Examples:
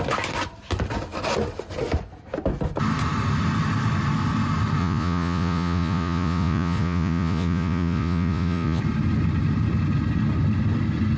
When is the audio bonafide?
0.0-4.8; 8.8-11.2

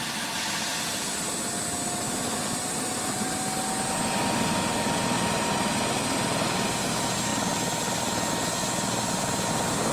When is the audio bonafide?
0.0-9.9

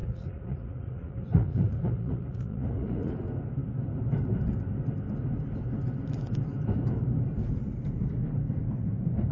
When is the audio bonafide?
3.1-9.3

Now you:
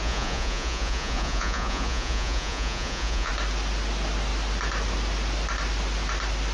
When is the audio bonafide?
3.3-6.5

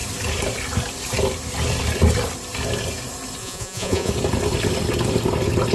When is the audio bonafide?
0.0-3.4; 4.1-5.7

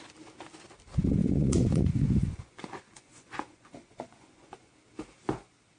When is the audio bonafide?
0.0-1.2; 4.7-5.8